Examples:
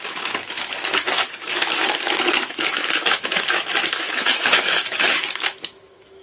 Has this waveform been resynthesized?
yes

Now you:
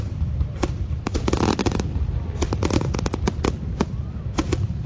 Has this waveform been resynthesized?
no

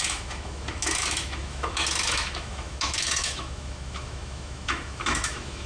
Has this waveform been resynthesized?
yes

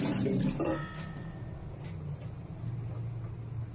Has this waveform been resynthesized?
no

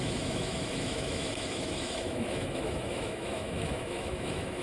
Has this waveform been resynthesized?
yes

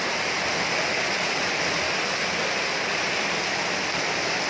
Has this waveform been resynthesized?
no